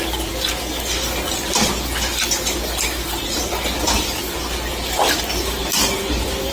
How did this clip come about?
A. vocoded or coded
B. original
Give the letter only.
B